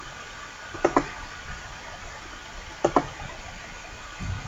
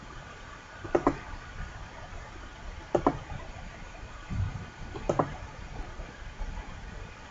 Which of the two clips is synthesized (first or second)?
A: second